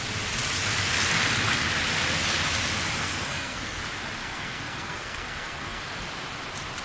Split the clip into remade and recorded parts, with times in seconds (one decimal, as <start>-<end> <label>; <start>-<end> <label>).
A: 0.0-3.0 recorded; 3.0-3.8 remade; 3.8-4.2 recorded; 4.2-5.8 remade; 5.8-6.8 recorded